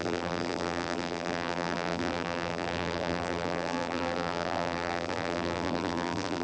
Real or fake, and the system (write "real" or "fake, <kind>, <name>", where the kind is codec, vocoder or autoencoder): fake, vocoder, BigVGAN v2